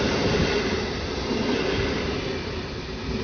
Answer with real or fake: real